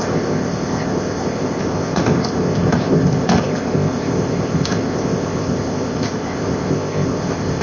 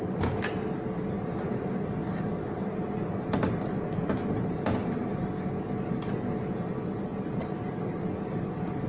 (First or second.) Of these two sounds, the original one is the second